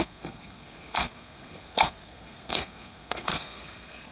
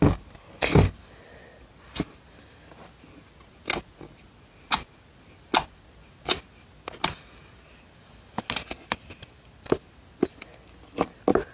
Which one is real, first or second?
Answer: second